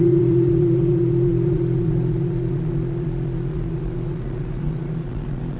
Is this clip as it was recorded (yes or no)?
no